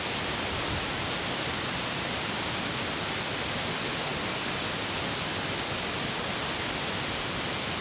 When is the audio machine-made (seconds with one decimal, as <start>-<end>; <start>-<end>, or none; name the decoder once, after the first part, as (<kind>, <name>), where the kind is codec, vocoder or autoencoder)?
none